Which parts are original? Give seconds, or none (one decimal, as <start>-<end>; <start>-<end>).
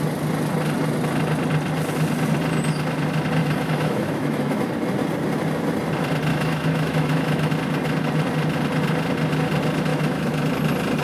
0.0-3.4; 4.7-6.3; 7.5-9.9; 10.4-11.0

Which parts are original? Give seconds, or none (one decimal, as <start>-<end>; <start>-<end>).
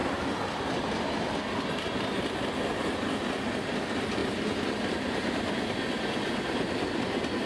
0.0-7.5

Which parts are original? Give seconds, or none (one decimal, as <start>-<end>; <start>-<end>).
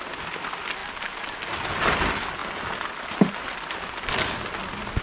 0.0-5.0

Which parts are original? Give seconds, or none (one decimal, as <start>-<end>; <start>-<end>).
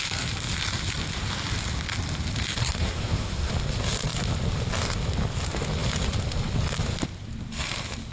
0.0-2.6; 3.5-8.1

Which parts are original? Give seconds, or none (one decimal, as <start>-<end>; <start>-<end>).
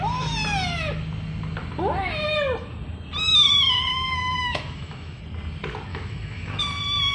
0.0-3.9; 5.2-5.9; 6.6-7.1